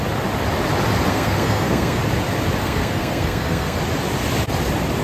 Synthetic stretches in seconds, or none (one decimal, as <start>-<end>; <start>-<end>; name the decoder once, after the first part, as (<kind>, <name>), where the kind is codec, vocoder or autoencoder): 1.1-2.0 (codec, SNAC); 2.6-3.8